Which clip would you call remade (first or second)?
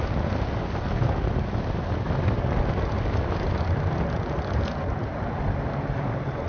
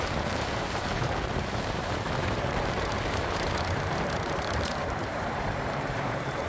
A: second